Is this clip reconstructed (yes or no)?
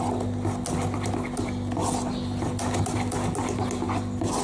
no